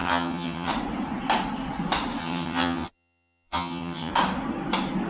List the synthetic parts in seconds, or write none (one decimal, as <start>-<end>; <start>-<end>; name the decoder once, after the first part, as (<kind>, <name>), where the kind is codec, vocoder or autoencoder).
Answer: 0.0-0.7 (vocoder, HiFi-GAN); 2.2-4.1